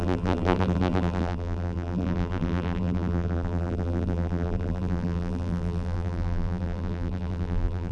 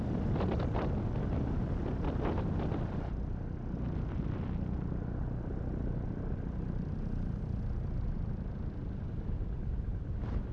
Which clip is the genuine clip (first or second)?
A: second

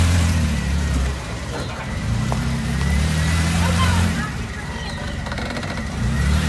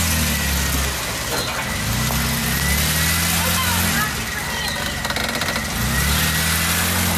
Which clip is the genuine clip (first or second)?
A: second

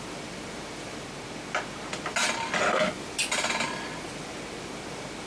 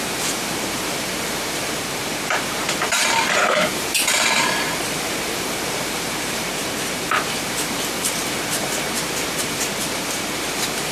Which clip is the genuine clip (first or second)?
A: first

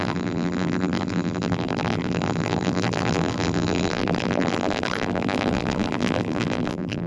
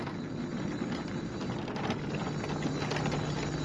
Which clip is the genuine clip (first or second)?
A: second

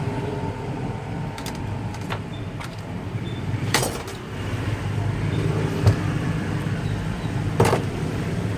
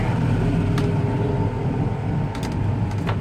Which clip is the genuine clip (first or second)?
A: second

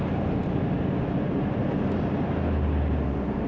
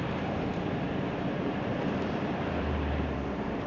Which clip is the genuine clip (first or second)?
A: first